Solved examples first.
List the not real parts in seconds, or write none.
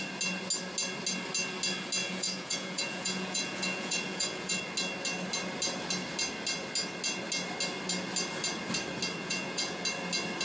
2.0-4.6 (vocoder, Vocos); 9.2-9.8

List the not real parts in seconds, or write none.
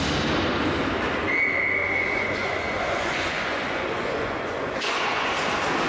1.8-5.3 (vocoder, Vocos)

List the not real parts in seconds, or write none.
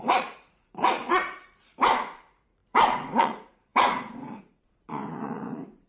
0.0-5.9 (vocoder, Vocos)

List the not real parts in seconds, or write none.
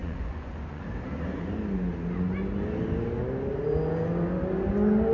0.0-0.8 (vocoder, Vocos)